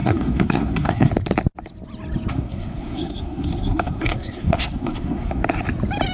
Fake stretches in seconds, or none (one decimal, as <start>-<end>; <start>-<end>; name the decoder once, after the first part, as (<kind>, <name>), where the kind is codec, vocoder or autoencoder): 0.0-1.1 (codec, SNAC); 2.3-5.4